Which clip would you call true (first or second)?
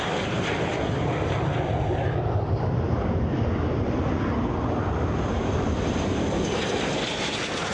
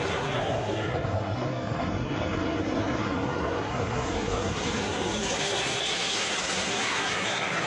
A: first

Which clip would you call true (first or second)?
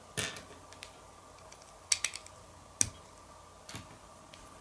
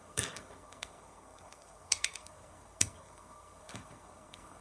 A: first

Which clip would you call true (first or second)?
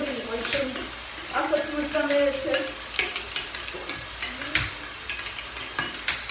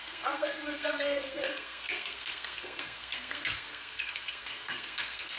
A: first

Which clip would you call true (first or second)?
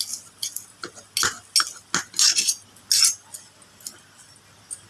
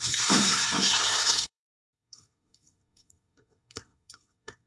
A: first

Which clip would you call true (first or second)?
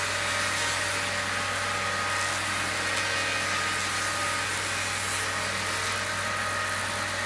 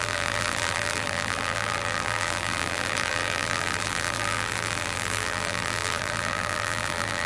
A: first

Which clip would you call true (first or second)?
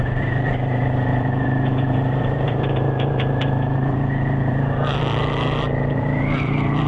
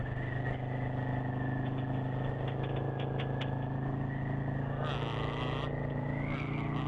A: second